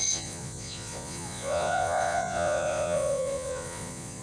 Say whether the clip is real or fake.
fake